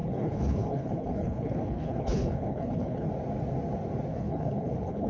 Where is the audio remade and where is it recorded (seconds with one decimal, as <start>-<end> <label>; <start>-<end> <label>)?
0.0-3.1 remade; 3.1-4.1 recorded; 4.1-5.1 remade